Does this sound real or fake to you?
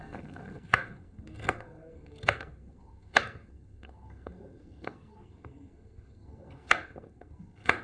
fake